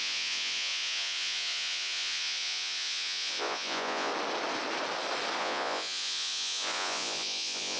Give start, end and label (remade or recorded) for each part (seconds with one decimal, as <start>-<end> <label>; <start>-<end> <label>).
0.0-4.1 remade; 4.1-5.4 recorded; 5.4-7.8 remade